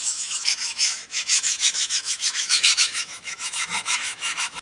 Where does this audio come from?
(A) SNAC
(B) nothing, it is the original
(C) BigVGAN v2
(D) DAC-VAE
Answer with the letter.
D